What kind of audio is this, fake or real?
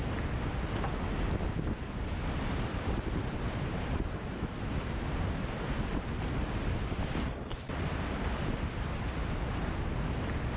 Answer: real